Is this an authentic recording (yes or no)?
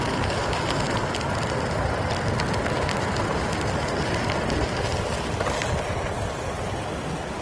yes